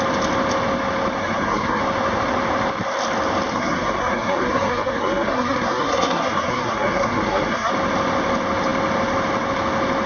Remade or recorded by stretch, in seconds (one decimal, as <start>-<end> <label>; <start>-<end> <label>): 0.0-1.2 recorded; 1.2-1.8 remade; 1.8-3.5 recorded; 3.5-7.7 remade; 7.7-10.1 recorded